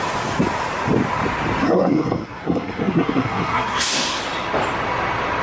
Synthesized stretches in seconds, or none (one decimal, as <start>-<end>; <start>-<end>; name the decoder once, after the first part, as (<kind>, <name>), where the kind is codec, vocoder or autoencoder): 1.6-4.2 (codec, SNAC)